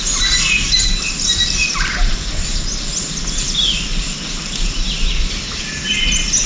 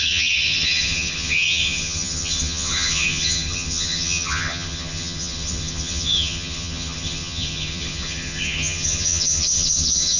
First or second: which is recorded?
first